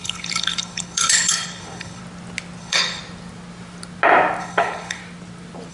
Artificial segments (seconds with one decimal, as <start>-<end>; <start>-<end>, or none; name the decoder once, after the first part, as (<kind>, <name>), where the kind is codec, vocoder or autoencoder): 0.0-2.0 (codec, HILCodec); 2.6-3.0; 4.4-5.0